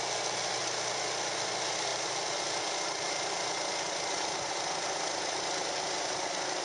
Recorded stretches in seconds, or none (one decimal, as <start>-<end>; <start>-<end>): 0.0-6.6